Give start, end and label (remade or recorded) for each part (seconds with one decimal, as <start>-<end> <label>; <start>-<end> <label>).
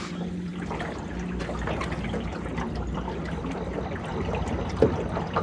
0.0-5.4 recorded